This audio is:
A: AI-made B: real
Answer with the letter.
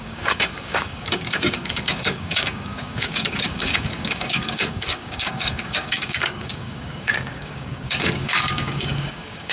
A